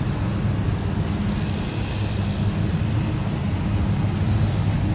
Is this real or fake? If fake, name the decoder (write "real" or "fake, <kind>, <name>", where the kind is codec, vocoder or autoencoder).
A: real